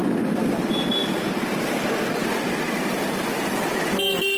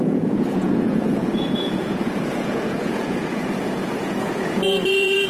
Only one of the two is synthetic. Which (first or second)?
second